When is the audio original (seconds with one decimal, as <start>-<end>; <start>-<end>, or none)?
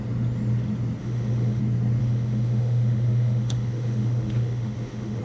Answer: 0.0-1.0; 1.6-2.0